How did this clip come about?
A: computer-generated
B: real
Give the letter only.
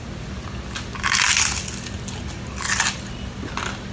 B